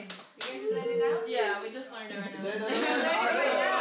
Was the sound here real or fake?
real